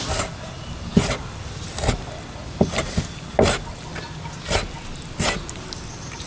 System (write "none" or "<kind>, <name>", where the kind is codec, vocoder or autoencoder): none